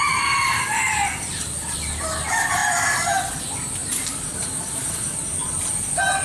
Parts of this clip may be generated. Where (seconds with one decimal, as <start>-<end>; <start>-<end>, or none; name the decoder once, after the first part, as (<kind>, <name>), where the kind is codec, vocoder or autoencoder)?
3.8-5.7 (vocoder, BigVGAN v2)